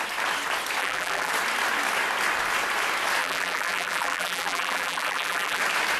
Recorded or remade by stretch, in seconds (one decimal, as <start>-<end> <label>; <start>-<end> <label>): 0.0-0.8 recorded; 0.8-1.3 remade; 1.3-3.2 recorded; 3.2-5.6 remade; 5.6-6.0 recorded